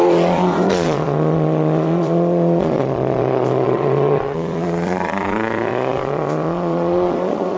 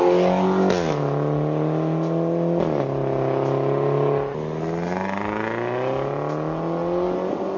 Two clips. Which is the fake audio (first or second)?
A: first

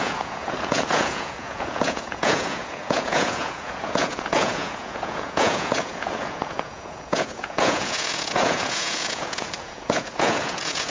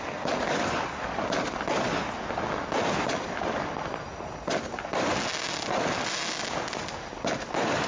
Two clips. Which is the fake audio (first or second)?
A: first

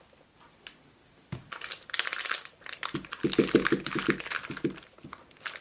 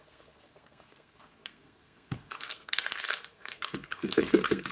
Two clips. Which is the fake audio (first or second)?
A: second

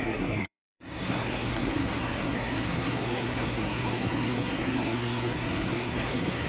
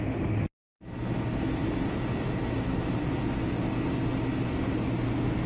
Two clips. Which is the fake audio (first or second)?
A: first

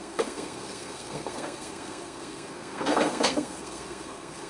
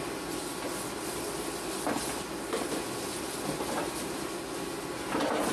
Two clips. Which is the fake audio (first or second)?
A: first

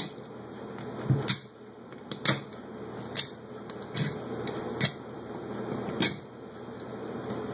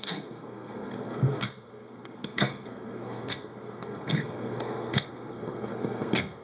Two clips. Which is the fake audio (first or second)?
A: second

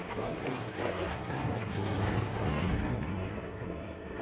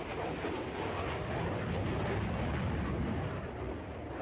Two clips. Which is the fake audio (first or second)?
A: first